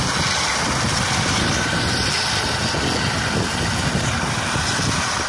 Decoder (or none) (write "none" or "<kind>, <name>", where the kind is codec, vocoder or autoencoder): none